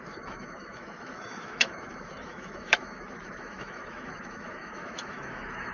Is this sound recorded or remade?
remade